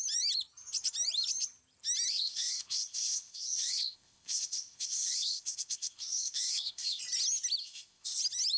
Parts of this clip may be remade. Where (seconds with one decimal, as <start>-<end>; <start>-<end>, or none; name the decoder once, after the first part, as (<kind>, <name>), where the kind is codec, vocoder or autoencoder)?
2.1-7.0 (codec, ZipCodec); 7.6-8.2